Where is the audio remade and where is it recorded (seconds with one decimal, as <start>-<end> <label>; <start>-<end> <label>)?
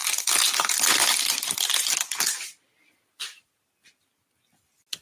0.0-5.0 recorded